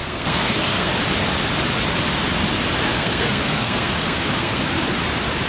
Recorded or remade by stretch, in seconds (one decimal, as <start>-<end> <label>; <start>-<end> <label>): 0.0-0.9 remade; 0.9-2.9 recorded; 2.9-4.6 remade; 4.6-5.5 recorded